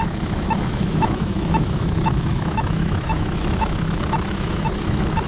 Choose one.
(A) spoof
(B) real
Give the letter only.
A